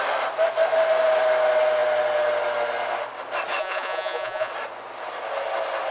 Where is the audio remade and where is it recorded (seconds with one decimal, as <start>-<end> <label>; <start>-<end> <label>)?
0.0-3.6 recorded; 3.6-4.5 remade; 4.5-5.9 recorded